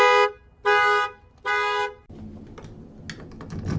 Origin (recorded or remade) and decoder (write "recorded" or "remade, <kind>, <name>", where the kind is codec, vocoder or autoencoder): recorded